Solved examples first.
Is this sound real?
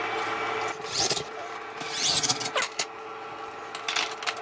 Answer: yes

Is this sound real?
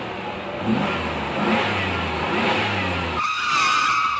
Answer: yes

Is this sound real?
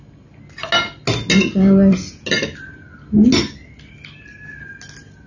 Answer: yes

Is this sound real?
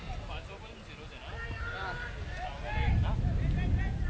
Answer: yes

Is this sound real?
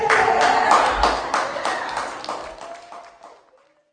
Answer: yes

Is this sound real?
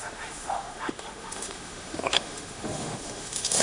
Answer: no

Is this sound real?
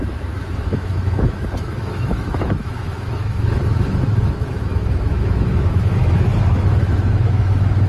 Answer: no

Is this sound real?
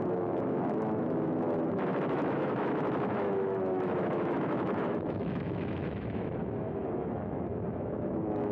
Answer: no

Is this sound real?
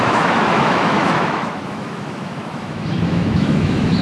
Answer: no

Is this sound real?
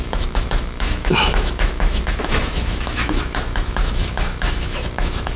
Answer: no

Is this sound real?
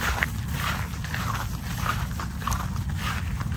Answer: yes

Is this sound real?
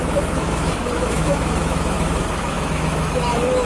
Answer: no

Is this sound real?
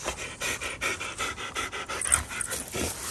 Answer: yes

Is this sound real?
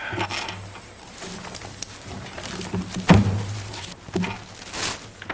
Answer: yes